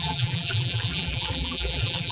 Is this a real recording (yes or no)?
no